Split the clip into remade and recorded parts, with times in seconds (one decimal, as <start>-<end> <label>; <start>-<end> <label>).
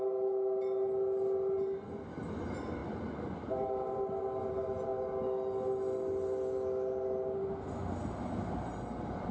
0.0-9.3 recorded